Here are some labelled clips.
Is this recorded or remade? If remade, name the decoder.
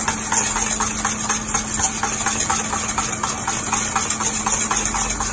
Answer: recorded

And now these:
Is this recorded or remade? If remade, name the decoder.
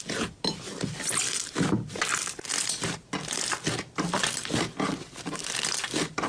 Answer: recorded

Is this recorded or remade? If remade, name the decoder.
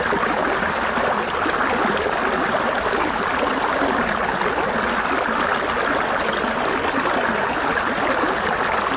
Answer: recorded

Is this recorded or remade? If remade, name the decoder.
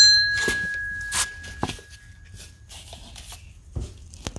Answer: recorded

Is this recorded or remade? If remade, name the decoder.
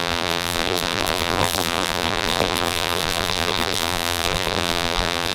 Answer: remade, vocoder, BigVGAN v2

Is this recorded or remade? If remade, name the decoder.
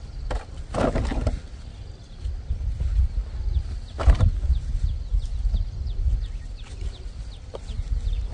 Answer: recorded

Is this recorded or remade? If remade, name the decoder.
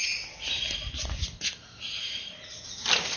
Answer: recorded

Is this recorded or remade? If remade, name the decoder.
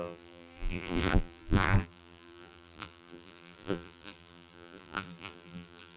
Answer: remade, vocoder, BigVGAN v2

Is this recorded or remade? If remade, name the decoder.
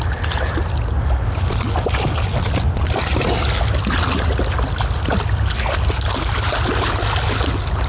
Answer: recorded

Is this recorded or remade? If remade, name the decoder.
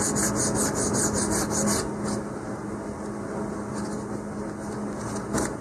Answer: recorded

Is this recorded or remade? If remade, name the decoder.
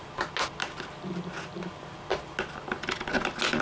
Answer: recorded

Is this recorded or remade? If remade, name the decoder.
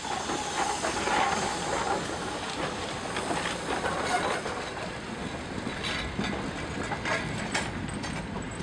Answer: recorded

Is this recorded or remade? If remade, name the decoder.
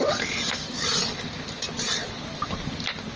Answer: recorded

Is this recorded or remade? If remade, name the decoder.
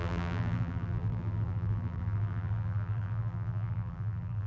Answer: remade, vocoder, BigVGAN v2